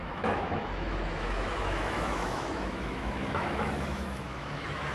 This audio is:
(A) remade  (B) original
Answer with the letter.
A